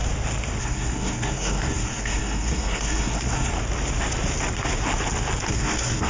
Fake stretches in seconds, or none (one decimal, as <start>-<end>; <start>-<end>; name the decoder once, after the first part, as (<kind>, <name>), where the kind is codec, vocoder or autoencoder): 0.6-3.5 (codec, SNAC); 5.5-6.1